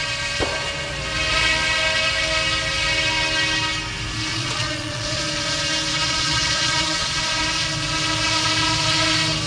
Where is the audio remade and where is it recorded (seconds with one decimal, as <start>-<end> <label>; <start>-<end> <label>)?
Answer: 0.0-4.3 recorded; 4.3-5.2 remade; 5.2-5.9 recorded; 5.9-7.2 remade; 7.2-9.5 recorded

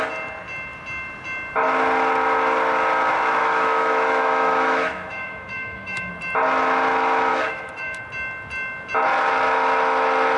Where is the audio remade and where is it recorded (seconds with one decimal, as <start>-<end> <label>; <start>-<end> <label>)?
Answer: 0.0-3.4 recorded; 3.4-6.1 remade; 6.1-7.3 recorded; 7.3-8.0 remade; 8.0-10.4 recorded

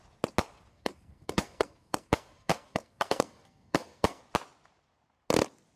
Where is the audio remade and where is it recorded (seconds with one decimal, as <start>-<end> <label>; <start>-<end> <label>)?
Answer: 0.0-0.7 recorded; 0.7-4.2 remade; 4.2-5.8 recorded

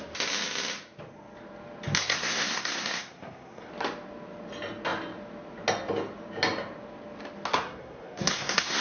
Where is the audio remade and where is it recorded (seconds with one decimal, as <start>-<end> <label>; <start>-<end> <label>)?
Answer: 0.0-2.0 recorded; 2.0-3.7 remade; 3.7-7.5 recorded; 7.5-8.8 remade